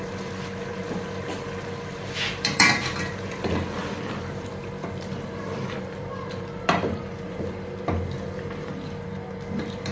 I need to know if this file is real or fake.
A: fake